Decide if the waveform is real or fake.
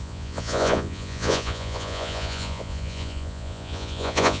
fake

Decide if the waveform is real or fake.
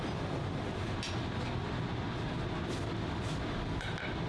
real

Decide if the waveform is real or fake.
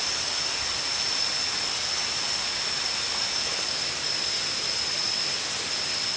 real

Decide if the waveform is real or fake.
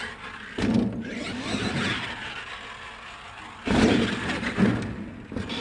real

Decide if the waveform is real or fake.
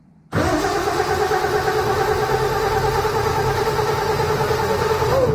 real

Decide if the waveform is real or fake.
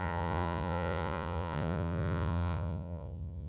fake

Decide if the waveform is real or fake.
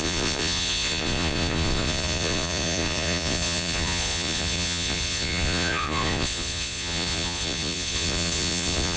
fake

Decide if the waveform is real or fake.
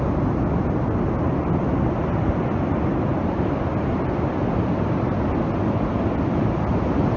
real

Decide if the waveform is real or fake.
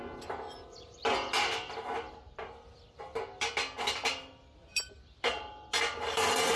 real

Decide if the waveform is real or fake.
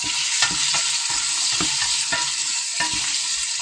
real